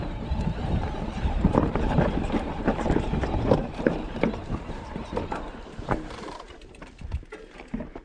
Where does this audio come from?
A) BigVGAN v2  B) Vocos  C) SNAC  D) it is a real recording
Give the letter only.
A